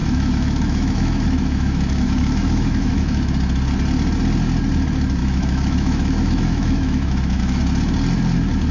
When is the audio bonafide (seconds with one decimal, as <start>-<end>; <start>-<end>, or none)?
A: 3.3-5.2; 7.6-8.7